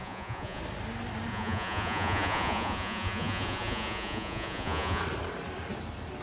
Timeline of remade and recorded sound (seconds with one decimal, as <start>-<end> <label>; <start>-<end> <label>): 0.0-0.6 remade; 0.6-1.3 recorded; 1.3-5.0 remade; 5.0-6.2 recorded

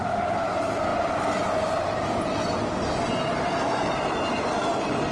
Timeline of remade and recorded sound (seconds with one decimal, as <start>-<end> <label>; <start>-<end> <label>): 0.0-5.1 recorded